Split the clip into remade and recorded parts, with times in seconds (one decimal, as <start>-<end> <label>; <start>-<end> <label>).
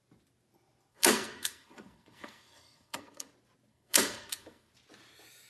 0.0-0.9 recorded; 0.9-3.3 remade; 3.3-3.7 recorded; 3.7-4.7 remade; 4.7-5.5 recorded